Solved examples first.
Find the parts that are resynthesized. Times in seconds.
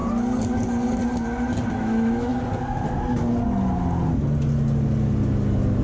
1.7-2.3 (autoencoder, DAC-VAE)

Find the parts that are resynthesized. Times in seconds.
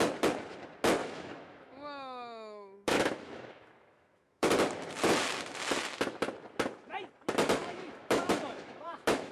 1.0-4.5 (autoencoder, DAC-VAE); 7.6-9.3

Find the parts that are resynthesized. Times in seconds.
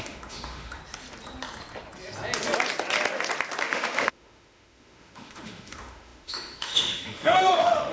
0.0-0.8 (autoencoder, DAC-VAE); 3.6-7.9